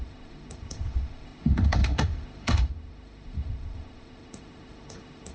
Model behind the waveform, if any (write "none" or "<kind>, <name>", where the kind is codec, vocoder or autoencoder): autoencoder, DAC-VAE